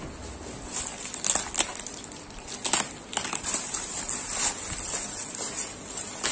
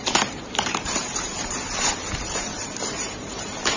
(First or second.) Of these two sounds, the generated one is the second